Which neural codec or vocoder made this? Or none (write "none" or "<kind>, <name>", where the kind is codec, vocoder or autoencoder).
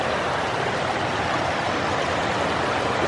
none